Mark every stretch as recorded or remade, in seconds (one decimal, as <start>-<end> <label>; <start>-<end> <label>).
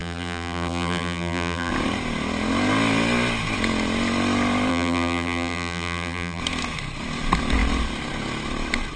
0.0-1.7 remade; 1.7-4.7 recorded; 4.7-6.4 remade; 6.4-9.0 recorded